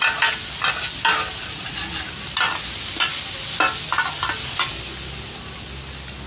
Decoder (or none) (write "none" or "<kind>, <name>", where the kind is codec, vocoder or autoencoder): none